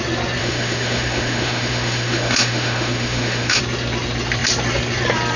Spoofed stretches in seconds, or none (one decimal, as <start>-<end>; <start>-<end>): 0.4-3.6